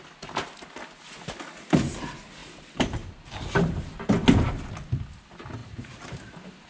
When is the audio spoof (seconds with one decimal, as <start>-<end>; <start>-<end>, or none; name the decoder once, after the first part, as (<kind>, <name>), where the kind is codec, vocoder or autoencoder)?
2.4-3.3 (vocoder, BigVGAN v2); 5.6-6.2